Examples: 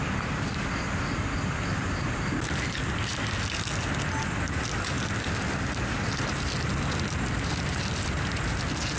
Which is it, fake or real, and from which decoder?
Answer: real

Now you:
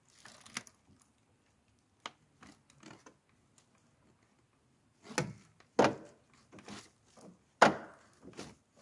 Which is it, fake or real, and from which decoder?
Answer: real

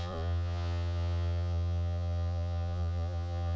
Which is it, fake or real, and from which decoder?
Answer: fake, vocoder, Vocos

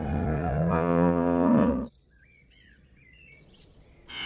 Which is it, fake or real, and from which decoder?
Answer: fake, vocoder, Vocos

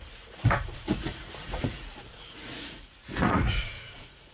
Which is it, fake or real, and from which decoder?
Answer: fake, vocoder, Vocos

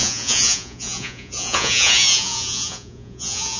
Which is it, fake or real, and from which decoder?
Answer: fake, vocoder, Vocos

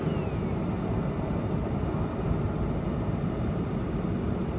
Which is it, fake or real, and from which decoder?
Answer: real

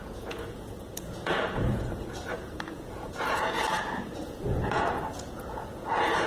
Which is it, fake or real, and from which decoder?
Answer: fake, vocoder, Vocos